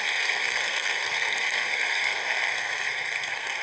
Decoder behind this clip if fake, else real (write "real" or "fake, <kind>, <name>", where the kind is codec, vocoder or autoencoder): fake, codec, SNAC